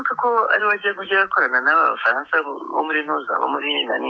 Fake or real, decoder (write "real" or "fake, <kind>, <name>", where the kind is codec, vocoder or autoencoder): fake, autoencoder, DAC-VAE